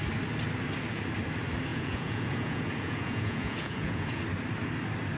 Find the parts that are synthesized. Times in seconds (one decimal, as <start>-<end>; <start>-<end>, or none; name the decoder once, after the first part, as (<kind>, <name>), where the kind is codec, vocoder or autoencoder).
1.7-4.2 (vocoder, Vocos)